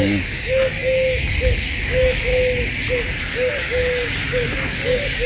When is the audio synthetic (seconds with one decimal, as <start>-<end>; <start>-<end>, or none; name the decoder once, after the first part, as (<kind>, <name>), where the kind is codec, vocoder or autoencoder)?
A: 0.0-2.3 (codec, DAC); 3.2-5.3